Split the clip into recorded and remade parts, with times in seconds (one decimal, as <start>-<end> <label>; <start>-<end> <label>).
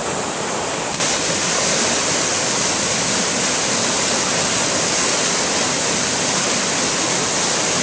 0.0-7.8 recorded